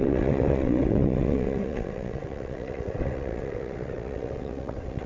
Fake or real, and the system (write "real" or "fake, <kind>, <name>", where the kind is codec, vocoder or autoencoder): fake, vocoder, WaveNeXt